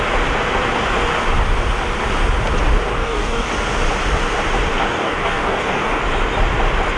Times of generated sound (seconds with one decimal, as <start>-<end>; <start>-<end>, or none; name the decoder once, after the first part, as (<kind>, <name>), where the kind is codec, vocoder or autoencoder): 2.9-3.5 (codec, DAC); 4.8-6.0